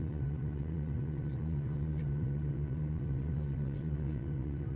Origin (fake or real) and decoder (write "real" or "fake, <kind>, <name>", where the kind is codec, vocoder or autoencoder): fake, vocoder, WaveNeXt